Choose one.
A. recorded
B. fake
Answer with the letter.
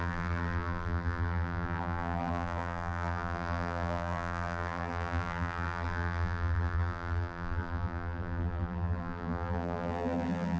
B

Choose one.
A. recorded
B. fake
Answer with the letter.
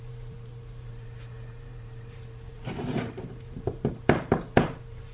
B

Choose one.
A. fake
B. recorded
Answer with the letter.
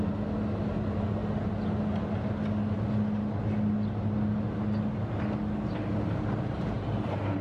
B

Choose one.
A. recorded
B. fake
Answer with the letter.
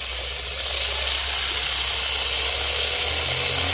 A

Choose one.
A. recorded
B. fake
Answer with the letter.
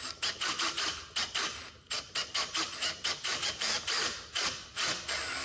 A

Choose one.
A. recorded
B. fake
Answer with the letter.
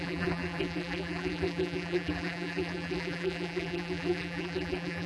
B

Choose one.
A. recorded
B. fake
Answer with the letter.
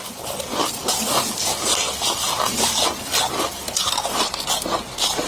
A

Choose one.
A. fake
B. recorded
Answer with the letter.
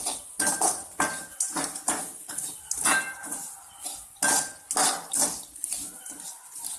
B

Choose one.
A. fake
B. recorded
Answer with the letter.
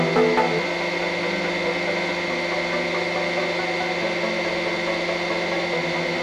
B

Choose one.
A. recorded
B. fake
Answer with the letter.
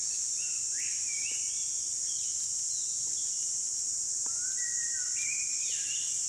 A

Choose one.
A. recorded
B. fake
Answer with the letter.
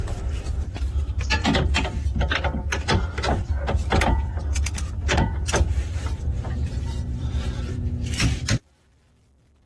B